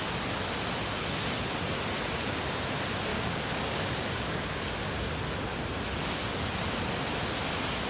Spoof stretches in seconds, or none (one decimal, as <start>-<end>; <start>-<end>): 3.1-4.9